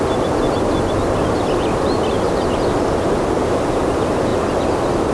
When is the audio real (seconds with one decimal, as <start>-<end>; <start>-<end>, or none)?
0.0-5.1